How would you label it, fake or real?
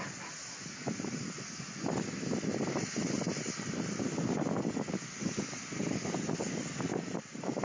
real